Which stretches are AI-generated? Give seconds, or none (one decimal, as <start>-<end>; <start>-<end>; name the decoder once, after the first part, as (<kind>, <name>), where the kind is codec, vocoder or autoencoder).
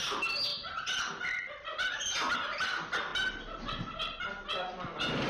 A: none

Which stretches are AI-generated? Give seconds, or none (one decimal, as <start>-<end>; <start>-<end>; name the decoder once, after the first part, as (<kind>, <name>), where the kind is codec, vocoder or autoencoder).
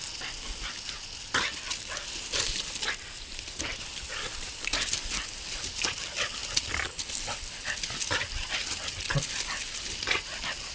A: none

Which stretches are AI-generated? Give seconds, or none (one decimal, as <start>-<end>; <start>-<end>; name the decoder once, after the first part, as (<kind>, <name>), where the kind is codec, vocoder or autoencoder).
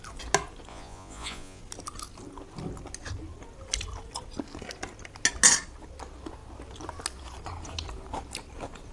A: 0.7-1.6 (vocoder, Vocos)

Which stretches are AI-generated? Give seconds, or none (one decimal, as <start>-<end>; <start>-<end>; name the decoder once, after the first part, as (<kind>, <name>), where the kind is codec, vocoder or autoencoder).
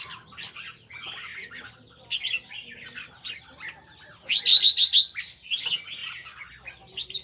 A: none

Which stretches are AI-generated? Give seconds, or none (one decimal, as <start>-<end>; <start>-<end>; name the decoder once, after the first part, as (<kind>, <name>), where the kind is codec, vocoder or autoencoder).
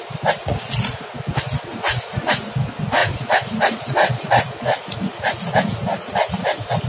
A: 0.4-1.1 (vocoder, Vocos); 1.7-2.3; 3.0-6.9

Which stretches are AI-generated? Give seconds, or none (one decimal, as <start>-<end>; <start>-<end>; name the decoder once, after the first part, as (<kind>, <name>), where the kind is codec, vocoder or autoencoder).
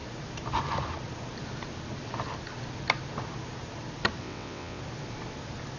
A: 4.2-4.8 (vocoder, WaveNeXt)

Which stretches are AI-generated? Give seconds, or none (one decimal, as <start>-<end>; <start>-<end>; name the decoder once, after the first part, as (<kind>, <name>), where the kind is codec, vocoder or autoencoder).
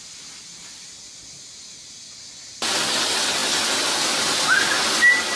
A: none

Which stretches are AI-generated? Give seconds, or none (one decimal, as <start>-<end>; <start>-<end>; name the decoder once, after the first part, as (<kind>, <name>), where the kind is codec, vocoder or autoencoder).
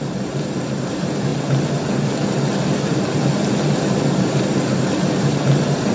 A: 0.0-1.3 (vocoder, BigVGAN v2); 4.2-5.9